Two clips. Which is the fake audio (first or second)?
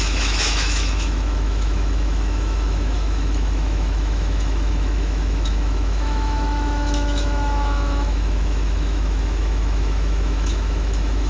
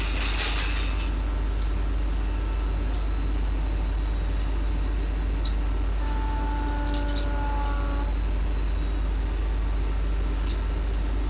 first